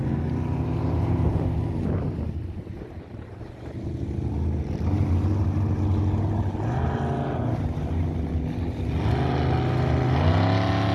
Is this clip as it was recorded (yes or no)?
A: yes